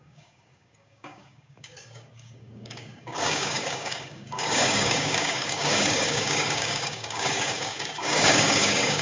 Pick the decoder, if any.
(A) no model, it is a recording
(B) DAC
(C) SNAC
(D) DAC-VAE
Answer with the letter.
B